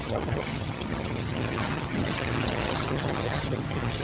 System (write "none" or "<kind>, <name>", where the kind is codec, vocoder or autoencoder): vocoder, HiFi-GAN